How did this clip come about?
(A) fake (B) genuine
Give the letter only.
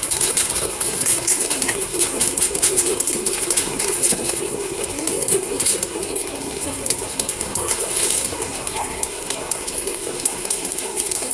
A